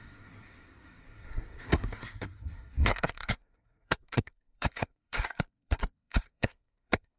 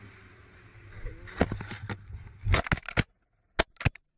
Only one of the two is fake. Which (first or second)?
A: first